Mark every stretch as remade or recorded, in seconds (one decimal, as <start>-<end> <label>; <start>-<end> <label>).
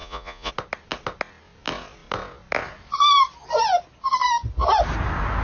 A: 0.0-0.5 remade; 0.5-5.4 recorded